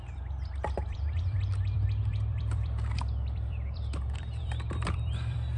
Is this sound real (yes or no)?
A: no